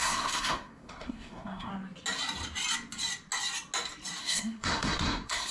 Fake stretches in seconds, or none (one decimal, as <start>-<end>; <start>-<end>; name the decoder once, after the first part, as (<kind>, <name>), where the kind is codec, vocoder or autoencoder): 0.0-1.7 (codec, SNAC); 4.2-5.5